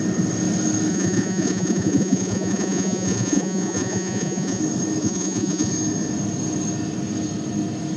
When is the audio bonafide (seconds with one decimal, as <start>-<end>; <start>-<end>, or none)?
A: 0.0-0.9; 4.6-5.0; 5.7-8.0